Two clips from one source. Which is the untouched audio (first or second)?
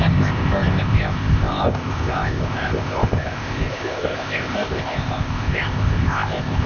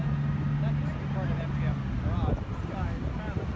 second